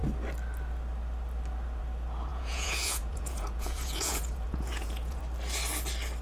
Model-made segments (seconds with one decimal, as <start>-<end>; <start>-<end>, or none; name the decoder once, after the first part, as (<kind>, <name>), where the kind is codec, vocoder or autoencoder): 2.3-5.2 (vocoder, Vocos)